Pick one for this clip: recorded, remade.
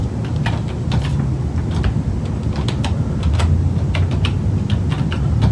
recorded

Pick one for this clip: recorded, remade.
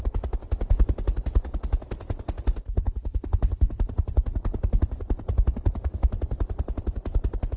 recorded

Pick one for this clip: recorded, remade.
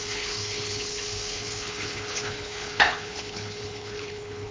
remade